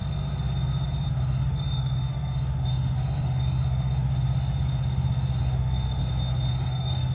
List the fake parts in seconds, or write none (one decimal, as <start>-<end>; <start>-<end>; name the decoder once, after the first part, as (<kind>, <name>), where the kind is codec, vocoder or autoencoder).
1.1-4.1 (autoencoder, DAC-VAE); 5.4-6.0; 6.5-7.1